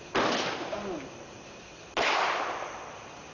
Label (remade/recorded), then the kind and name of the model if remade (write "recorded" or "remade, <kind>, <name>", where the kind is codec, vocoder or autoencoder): recorded